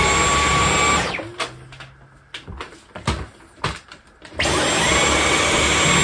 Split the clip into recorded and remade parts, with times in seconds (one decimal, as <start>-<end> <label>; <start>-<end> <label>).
0.0-6.0 recorded